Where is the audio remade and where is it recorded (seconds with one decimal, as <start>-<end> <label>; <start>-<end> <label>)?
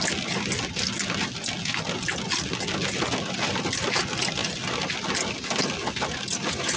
0.0-6.8 recorded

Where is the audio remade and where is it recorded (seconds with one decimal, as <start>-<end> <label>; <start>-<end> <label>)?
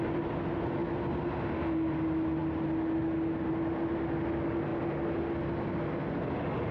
0.0-6.7 recorded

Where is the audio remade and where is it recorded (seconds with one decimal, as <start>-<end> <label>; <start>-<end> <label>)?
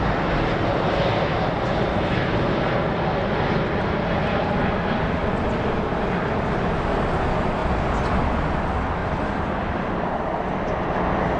0.0-9.0 recorded; 9.0-10.6 remade; 10.6-11.4 recorded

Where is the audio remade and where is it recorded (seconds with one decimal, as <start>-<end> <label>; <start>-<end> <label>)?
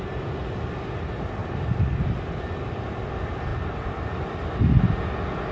0.0-1.4 recorded; 1.4-2.0 remade; 2.0-3.5 recorded; 3.5-4.1 remade; 4.1-5.5 recorded